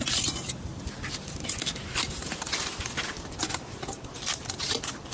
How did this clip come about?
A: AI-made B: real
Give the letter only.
B